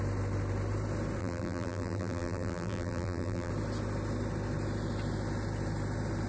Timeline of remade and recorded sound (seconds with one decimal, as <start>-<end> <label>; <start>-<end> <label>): 0.0-1.2 recorded; 1.2-3.5 remade; 3.5-6.3 recorded